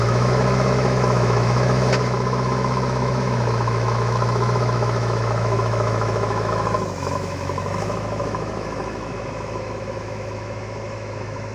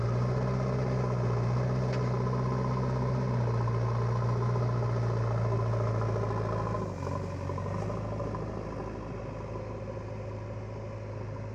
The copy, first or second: first